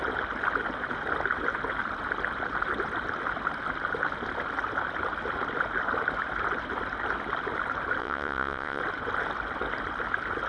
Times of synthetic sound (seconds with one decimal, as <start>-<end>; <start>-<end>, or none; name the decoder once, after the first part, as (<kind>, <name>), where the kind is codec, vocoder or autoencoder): 8.0-8.8 (vocoder, WaveNeXt)